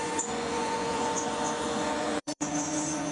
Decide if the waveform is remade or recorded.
remade